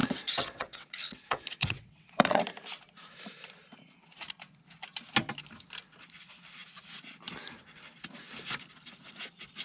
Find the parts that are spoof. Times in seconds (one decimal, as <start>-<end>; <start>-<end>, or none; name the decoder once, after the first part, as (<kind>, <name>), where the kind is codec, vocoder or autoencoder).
0.0-2.4 (vocoder, WaveNeXt)